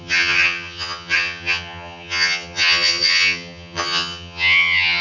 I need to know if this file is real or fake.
fake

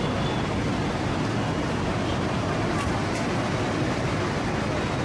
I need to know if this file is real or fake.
real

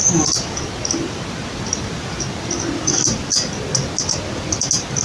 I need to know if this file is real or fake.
real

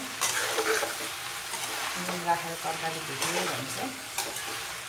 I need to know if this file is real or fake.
real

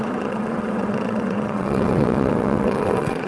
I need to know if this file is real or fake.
fake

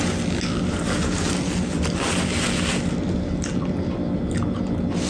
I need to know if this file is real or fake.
real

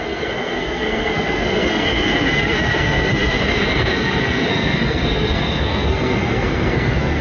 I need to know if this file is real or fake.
fake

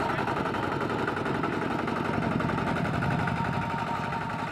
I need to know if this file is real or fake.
real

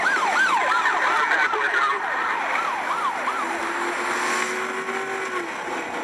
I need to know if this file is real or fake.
real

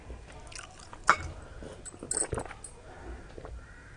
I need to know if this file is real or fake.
real